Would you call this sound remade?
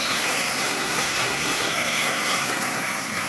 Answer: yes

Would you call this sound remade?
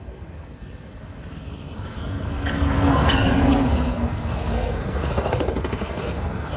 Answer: yes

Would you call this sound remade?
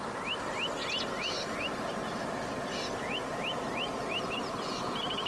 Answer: no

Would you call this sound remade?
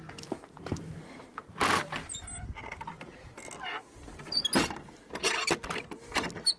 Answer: no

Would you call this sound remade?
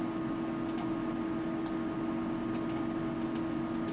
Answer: no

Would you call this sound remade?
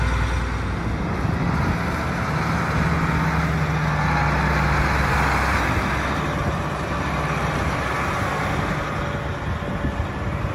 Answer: no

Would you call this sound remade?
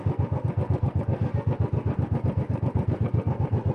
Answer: yes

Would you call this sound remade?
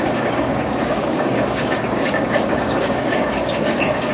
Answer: yes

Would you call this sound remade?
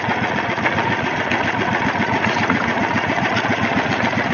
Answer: yes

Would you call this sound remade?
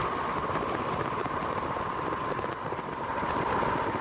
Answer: no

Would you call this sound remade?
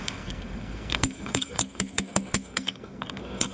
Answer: yes